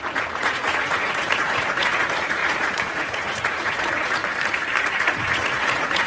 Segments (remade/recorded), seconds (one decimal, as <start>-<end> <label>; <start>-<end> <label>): 0.0-4.2 remade; 4.2-4.8 recorded; 4.8-6.1 remade